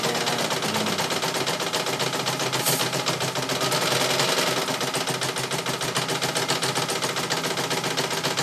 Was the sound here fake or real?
real